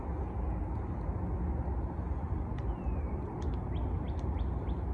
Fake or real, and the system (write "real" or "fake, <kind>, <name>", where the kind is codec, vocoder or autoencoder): real